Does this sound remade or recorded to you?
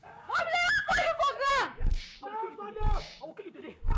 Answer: remade